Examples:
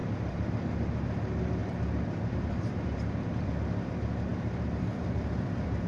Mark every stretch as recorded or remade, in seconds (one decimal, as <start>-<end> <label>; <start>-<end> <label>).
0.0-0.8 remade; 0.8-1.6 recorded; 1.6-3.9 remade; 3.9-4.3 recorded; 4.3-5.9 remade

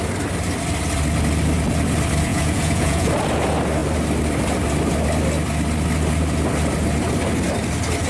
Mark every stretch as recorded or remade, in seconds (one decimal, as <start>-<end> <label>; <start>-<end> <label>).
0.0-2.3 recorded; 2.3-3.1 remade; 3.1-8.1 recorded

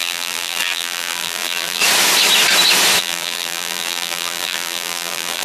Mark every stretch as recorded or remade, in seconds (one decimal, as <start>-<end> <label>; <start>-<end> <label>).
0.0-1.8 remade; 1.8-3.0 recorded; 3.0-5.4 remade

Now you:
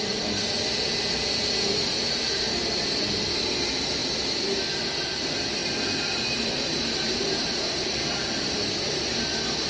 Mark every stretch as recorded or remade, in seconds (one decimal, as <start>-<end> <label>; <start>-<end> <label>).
0.0-4.0 remade; 4.0-4.9 recorded; 4.9-9.7 remade

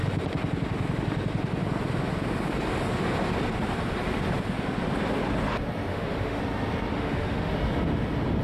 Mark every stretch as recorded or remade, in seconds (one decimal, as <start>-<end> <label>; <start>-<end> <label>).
0.0-5.9 recorded; 5.9-6.4 remade; 6.4-6.9 recorded; 6.9-7.5 remade; 7.5-8.4 recorded

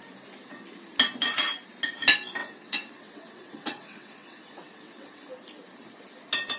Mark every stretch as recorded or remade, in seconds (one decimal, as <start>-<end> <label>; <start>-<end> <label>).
0.0-2.4 recorded; 2.4-5.3 remade; 5.3-6.6 recorded

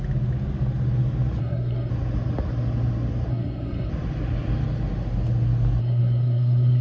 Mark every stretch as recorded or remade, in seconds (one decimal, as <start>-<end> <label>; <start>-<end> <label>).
0.0-1.4 recorded; 1.4-1.9 remade; 1.9-3.3 recorded; 3.3-3.9 remade; 3.9-5.8 recorded; 5.8-6.8 remade

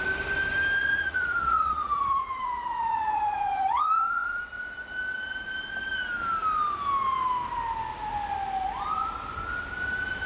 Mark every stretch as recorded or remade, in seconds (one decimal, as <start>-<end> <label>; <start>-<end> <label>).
0.0-0.8 recorded; 0.8-4.4 remade; 4.4-10.3 recorded